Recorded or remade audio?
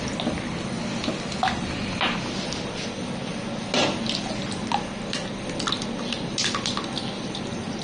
recorded